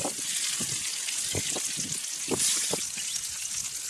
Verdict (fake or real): real